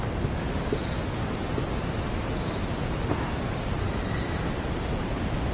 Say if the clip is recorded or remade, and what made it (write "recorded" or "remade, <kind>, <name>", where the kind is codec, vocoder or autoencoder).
recorded